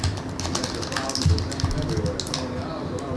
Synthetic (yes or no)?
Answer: no